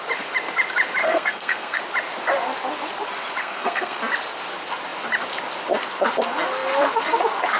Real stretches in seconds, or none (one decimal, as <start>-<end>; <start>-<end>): 0.0-1.0; 1.8-3.4; 4.0-7.6